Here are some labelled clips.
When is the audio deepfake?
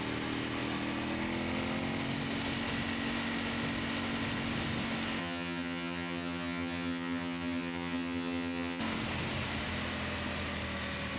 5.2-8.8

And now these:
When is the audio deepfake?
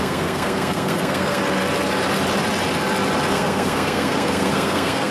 0.0-1.4; 3.3-5.1